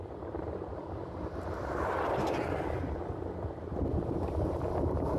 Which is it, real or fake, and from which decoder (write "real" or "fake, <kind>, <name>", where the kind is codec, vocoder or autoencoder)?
real